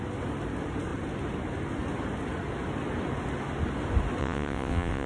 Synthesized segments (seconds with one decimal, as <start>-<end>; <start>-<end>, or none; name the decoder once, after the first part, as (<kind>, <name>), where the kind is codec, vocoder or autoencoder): 4.2-5.1 (vocoder, WaveNeXt)